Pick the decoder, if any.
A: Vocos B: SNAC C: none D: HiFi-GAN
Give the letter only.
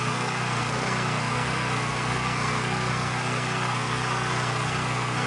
B